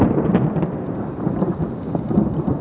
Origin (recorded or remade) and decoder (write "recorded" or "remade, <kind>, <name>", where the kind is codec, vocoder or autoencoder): recorded